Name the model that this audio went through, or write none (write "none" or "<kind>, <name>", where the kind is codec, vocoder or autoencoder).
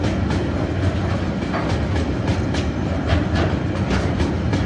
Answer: none